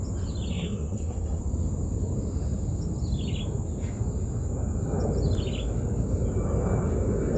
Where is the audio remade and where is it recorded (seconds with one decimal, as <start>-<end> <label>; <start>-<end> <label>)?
0.0-0.5 recorded; 0.5-1.4 remade; 1.4-7.4 recorded